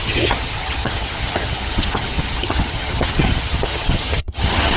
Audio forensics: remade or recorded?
remade